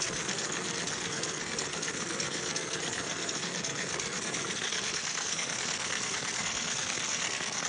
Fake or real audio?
fake